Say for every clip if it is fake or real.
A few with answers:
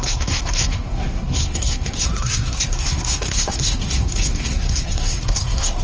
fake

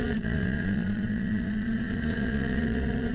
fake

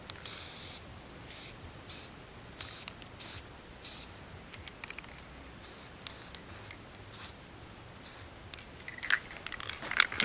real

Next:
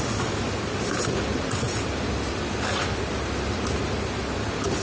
real